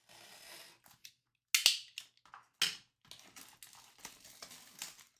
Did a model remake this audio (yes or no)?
no